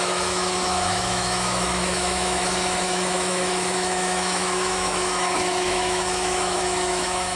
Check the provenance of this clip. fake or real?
fake